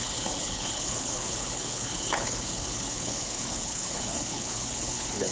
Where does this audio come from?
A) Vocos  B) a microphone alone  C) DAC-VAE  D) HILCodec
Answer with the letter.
D